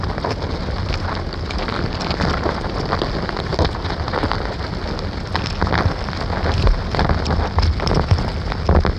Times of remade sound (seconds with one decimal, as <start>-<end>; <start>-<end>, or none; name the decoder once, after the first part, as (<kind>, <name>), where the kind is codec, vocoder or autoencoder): none